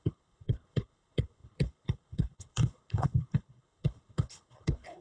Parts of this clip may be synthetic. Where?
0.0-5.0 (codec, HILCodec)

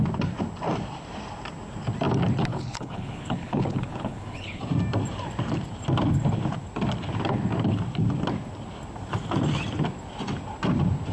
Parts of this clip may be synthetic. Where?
2.5-4.6 (codec, HILCodec)

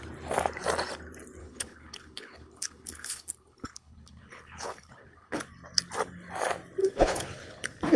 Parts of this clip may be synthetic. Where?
1.4-5.4 (codec, HILCodec); 6.8-8.0

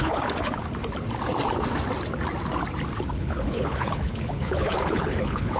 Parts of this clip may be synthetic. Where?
0.0-0.6 (codec, HILCodec); 3.1-5.6